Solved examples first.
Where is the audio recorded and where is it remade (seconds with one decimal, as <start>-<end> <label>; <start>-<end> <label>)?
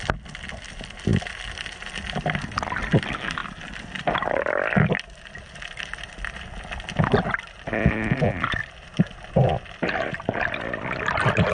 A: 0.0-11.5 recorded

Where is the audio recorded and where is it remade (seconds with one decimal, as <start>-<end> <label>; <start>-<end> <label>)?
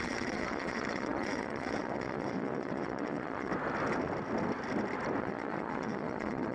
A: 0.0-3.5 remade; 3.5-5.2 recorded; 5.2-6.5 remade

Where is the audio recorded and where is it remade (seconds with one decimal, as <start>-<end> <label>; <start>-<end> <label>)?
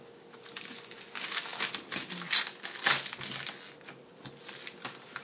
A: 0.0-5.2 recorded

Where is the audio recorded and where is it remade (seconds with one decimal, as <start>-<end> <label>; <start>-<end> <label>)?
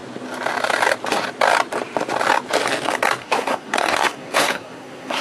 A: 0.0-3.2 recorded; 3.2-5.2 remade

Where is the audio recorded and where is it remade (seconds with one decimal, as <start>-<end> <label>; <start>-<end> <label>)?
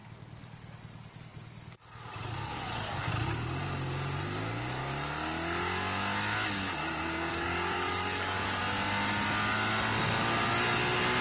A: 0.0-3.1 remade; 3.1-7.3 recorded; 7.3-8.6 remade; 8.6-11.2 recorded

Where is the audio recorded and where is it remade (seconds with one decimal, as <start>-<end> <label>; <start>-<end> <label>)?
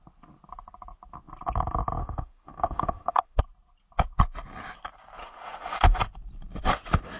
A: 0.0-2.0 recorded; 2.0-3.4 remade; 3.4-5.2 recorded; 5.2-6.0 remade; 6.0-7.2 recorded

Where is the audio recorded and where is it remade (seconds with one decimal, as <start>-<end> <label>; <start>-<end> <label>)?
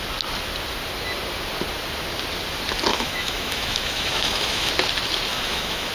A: 0.0-2.9 recorded; 2.9-4.7 remade; 4.7-5.3 recorded; 5.3-5.9 remade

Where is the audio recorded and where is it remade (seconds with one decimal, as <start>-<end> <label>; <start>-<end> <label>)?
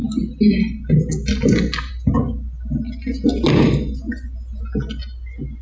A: 0.0-5.6 recorded